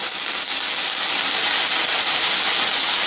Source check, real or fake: real